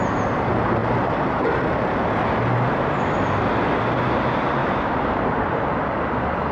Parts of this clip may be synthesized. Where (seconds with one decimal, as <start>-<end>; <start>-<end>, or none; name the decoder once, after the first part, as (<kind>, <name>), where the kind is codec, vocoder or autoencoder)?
0.8-3.0 (vocoder, BigVGAN v2); 4.6-5.7